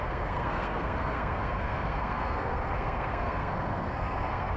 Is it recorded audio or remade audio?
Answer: remade